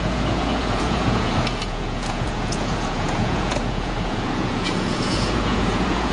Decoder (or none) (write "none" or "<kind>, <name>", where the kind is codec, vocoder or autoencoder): vocoder, Vocos